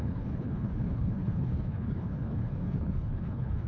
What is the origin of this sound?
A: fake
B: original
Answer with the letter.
A